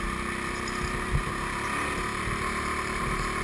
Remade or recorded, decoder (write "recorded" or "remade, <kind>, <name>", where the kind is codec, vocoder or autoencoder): recorded